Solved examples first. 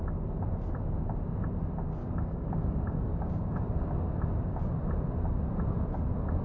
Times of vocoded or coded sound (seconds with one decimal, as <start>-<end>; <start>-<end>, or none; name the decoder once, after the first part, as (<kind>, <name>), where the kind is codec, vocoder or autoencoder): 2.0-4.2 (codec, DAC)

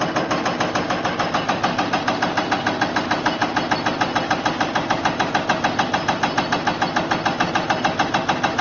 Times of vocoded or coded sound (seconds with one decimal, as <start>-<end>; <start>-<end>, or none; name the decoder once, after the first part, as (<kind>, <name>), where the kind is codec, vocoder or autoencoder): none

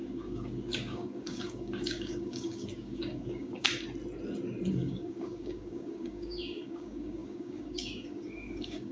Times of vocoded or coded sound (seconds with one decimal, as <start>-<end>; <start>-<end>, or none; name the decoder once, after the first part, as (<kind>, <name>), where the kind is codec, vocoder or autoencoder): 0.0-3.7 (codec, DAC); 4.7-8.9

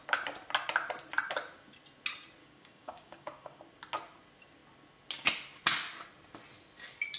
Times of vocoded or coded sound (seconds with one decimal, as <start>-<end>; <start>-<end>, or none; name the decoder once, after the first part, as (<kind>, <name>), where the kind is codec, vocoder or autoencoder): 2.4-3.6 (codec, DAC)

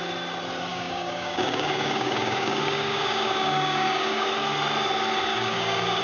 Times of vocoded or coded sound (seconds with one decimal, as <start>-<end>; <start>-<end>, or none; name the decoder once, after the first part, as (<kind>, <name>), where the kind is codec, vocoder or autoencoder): 0.7-4.3 (codec, DAC); 5.3-6.0